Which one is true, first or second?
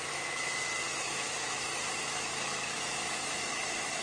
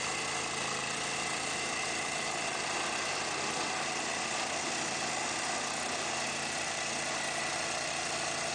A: second